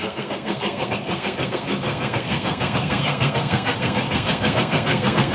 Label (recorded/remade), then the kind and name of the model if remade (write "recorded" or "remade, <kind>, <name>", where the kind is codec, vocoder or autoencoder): remade, codec, SNAC